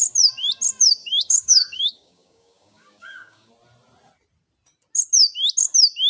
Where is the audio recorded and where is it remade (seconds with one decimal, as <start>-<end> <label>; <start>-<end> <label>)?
0.0-1.0 recorded; 1.0-3.5 remade; 3.5-6.1 recorded